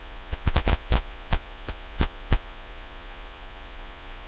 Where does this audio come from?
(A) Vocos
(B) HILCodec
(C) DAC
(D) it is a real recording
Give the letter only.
A